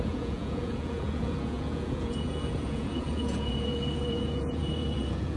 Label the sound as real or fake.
fake